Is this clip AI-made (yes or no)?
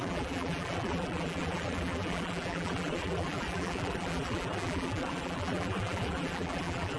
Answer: yes